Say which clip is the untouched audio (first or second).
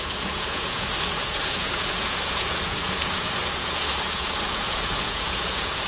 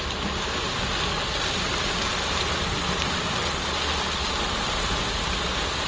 second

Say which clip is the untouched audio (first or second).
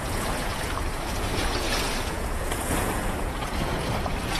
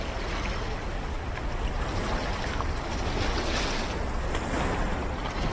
second